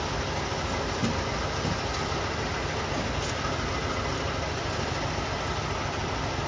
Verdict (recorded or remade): recorded